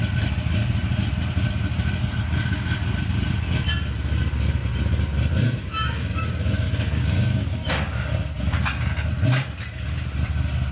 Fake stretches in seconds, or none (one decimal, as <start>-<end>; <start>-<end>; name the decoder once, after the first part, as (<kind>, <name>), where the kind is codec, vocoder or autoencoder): 5.7-8.1 (codec, DAC)